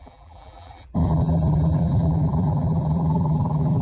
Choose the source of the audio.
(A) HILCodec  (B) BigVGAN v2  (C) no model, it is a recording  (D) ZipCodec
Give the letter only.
B